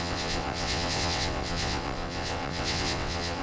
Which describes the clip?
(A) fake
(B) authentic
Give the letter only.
A